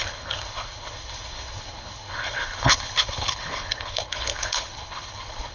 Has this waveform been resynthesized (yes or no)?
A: yes